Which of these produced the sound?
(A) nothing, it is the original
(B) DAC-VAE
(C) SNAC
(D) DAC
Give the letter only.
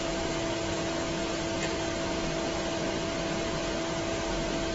A